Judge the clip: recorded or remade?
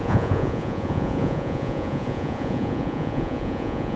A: remade